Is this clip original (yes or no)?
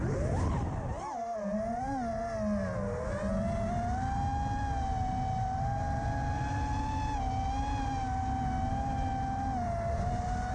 yes